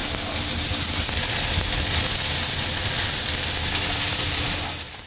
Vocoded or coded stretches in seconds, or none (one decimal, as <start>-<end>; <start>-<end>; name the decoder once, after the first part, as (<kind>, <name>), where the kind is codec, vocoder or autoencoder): none